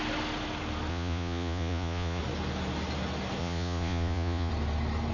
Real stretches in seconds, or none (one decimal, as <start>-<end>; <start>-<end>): 0.0-0.9; 2.2-3.4; 4.5-5.1